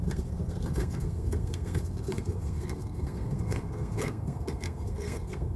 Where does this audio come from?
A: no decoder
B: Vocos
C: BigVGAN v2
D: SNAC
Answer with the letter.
D